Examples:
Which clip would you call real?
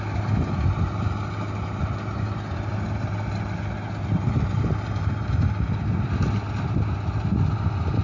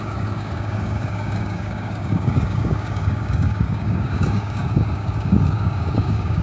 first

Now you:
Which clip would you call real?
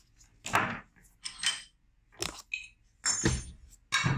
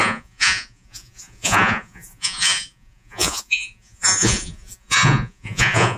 first